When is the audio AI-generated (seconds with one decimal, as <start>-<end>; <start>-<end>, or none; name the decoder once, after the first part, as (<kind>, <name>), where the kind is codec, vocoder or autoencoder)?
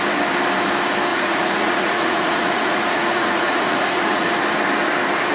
1.1-4.3 (vocoder, Vocos)